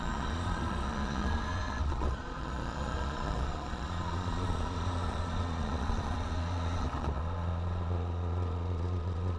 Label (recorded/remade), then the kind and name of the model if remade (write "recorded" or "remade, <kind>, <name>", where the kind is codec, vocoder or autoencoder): remade, vocoder, Vocos